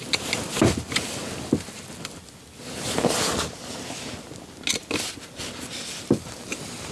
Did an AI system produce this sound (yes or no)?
no